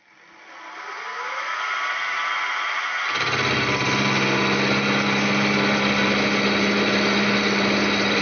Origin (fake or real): real